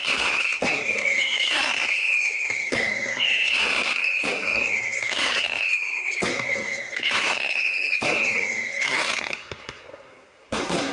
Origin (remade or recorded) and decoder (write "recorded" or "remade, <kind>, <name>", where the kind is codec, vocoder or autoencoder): remade, codec, SNAC